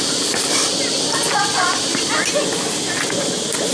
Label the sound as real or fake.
real